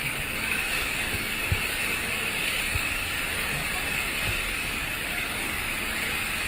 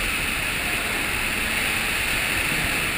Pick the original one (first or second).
second